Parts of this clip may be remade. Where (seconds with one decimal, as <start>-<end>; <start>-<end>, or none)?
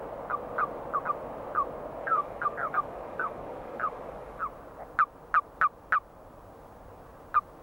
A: 2.0-4.4